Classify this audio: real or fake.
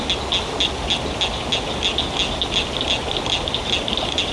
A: real